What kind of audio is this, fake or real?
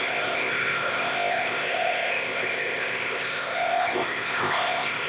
fake